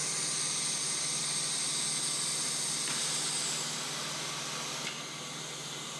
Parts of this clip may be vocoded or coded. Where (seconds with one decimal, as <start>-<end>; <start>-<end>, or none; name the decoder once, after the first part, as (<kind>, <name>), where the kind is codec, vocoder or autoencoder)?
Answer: none